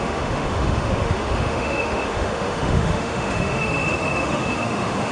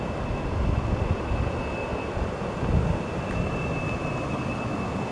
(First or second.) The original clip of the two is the second